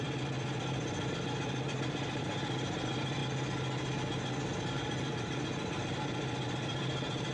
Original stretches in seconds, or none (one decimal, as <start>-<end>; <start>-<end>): 3.2-4.7